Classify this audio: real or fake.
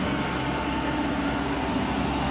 real